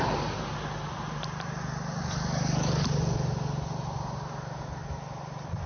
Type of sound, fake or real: real